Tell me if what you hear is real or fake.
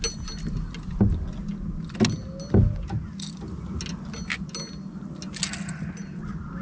real